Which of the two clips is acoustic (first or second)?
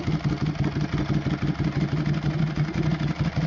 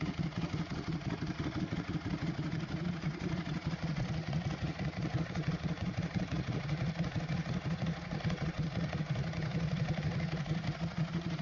first